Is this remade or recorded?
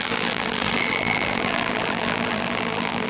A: remade